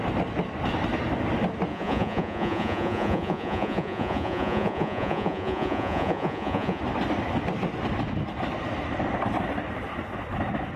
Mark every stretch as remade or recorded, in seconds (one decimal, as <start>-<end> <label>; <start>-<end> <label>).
0.0-1.7 recorded; 1.7-6.8 remade; 6.8-10.8 recorded